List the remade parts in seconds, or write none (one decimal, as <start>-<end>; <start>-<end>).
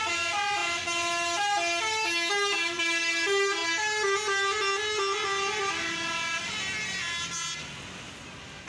none